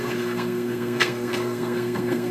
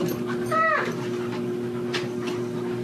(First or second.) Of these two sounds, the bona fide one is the second